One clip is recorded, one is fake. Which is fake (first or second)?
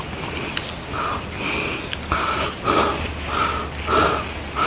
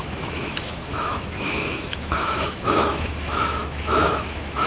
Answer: second